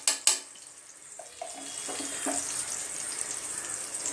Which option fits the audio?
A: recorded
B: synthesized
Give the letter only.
A